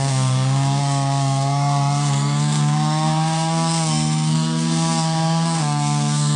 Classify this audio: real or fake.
fake